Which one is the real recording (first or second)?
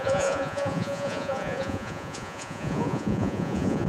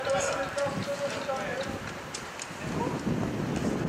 second